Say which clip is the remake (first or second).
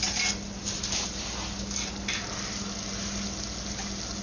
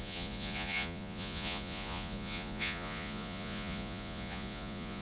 second